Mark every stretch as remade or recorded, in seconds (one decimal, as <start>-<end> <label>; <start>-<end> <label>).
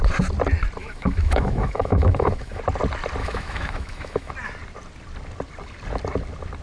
0.0-0.8 recorded; 0.8-2.6 remade; 2.6-3.2 recorded; 3.2-4.3 remade; 4.3-6.6 recorded